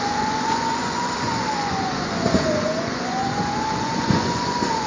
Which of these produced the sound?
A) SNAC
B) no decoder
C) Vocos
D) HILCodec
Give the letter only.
C